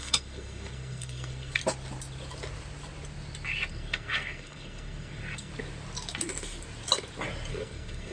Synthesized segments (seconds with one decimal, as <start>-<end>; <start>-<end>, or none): 0.0-1.6; 3.7-5.5; 7.5-8.1